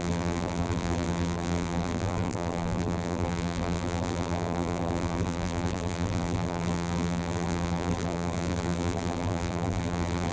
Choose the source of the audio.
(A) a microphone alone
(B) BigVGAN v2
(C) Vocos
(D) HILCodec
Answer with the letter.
B